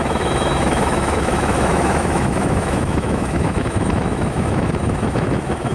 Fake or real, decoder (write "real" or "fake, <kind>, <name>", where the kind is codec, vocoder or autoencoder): fake, autoencoder, DAC-VAE